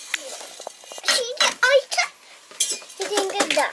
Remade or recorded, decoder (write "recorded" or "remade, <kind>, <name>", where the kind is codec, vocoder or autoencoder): recorded